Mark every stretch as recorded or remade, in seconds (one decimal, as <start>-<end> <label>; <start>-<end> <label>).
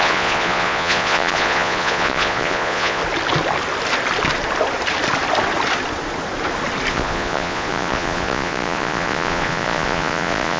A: 0.0-3.0 remade; 3.0-6.9 recorded; 6.9-10.6 remade